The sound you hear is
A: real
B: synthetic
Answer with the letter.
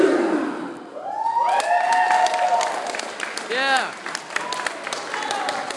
A